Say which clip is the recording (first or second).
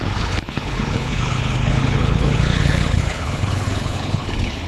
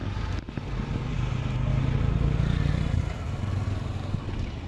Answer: second